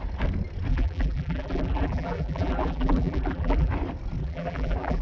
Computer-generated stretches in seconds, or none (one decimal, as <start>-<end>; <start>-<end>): 0.7-3.7; 4.2-5.0